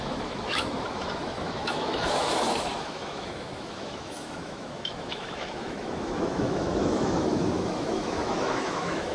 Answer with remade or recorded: remade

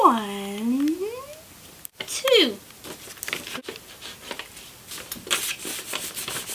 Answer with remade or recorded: recorded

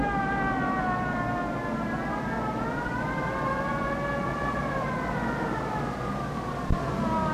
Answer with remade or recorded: recorded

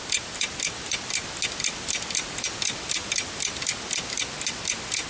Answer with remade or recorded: recorded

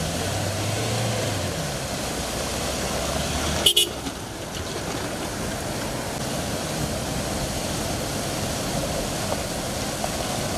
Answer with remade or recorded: recorded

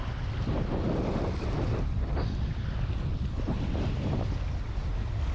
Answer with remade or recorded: recorded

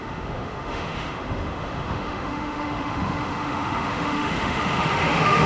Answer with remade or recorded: remade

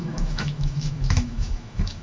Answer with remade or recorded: remade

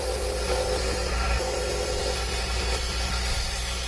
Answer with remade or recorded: recorded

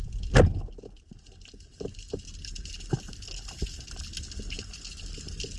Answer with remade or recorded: recorded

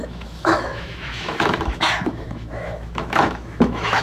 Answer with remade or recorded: remade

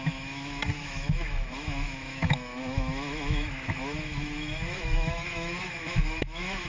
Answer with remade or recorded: remade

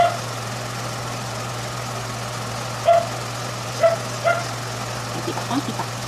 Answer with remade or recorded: recorded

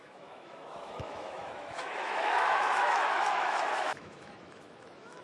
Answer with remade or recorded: remade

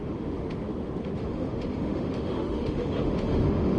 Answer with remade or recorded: remade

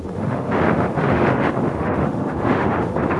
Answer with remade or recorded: remade